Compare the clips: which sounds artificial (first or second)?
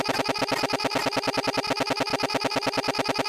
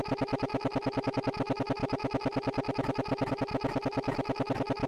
second